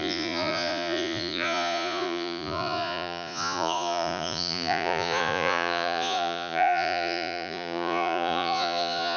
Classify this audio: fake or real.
fake